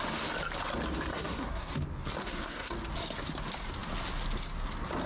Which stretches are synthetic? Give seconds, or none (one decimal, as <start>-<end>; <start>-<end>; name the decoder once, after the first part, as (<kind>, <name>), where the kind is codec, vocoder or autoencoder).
1.1-1.7 (codec, SNAC); 2.2-2.7